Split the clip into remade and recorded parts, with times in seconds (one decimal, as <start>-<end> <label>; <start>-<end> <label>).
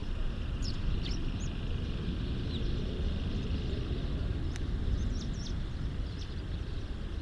0.0-0.9 remade; 0.9-4.2 recorded; 4.2-5.1 remade; 5.1-7.2 recorded